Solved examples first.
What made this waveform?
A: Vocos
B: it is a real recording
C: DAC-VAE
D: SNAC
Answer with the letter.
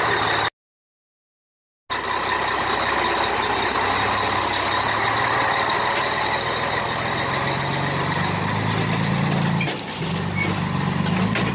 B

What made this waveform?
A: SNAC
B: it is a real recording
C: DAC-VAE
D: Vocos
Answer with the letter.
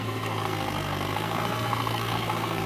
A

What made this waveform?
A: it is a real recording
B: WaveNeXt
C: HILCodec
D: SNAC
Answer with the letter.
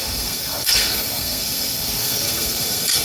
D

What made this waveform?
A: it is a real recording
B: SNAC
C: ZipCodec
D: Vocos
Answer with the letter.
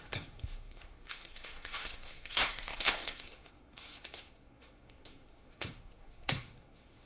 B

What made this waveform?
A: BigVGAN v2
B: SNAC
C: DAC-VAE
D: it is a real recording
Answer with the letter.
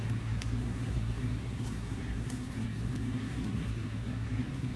B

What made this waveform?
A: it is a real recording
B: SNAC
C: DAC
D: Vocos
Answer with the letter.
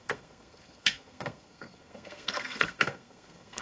B